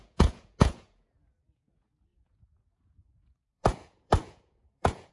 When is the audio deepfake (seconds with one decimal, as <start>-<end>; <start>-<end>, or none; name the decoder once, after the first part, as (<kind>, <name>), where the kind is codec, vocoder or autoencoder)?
0.0-5.1 (vocoder, Vocos)